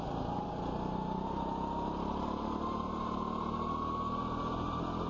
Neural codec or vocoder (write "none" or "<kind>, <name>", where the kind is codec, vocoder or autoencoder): none